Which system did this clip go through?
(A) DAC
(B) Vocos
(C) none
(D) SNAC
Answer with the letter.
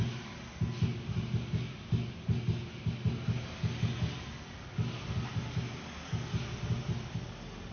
C